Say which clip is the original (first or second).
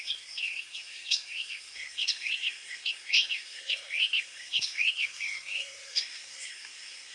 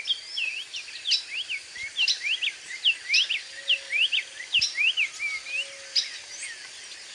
second